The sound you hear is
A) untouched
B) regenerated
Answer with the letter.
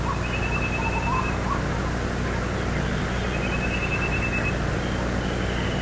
A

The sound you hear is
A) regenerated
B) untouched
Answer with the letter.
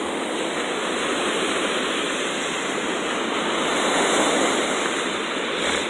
B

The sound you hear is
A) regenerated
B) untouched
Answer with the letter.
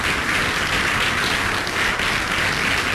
B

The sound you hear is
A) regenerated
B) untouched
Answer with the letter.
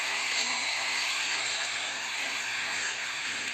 A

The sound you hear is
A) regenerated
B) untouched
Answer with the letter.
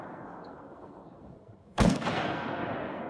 A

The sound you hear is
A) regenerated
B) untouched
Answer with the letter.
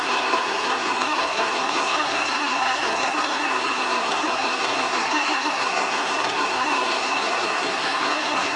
A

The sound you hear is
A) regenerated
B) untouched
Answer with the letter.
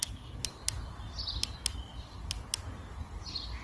B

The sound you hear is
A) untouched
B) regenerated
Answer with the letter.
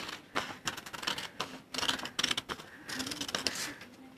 A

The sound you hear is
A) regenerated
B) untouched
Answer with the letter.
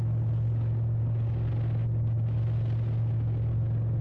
B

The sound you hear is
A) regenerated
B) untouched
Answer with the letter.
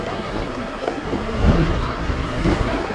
A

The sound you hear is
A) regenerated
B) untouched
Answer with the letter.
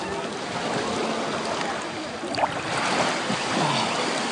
B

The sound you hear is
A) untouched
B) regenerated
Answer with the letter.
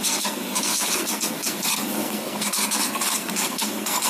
B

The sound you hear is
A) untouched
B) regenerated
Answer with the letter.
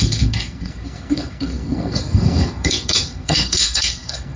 B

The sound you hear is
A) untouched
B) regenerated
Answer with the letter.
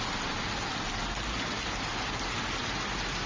A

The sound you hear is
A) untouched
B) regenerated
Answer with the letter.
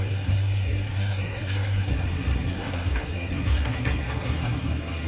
B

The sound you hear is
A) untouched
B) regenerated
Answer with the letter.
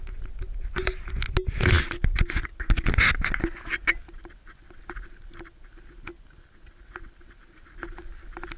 A